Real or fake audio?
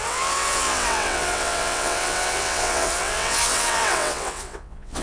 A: fake